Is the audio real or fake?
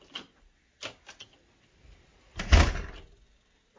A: real